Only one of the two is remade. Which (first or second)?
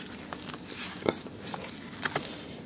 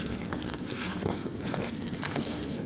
second